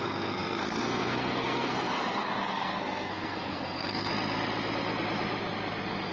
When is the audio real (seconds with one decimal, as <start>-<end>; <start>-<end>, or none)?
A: 4.1-6.1